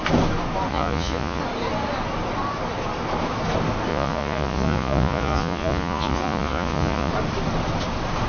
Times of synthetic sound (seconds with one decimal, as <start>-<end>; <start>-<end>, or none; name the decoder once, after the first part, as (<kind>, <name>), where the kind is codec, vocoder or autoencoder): 0.7-1.4 (vocoder, Vocos); 3.9-7.1